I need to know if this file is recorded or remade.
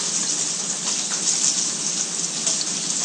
recorded